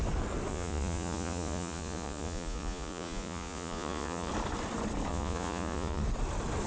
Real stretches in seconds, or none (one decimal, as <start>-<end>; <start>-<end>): 0.0-0.5; 4.3-5.1; 6.0-6.7